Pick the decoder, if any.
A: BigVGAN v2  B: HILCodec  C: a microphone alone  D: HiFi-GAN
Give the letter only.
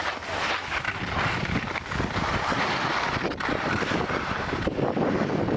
C